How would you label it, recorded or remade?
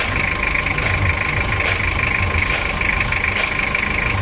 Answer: recorded